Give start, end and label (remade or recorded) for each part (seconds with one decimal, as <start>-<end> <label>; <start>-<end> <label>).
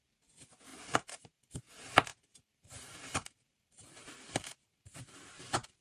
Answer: 0.0-0.7 recorded; 0.7-1.6 remade; 1.6-2.1 recorded; 2.1-5.8 remade